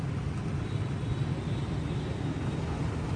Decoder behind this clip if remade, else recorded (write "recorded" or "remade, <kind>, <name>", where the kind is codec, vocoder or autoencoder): recorded